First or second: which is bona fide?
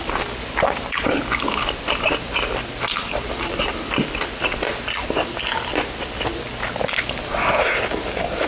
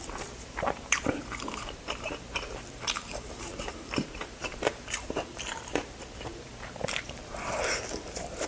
first